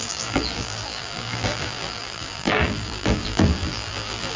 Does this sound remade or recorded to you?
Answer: remade